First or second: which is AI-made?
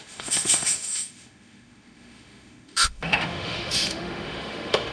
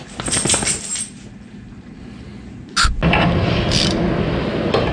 first